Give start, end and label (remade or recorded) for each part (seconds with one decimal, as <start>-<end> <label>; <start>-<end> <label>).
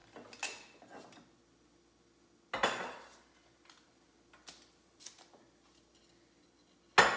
0.0-7.2 recorded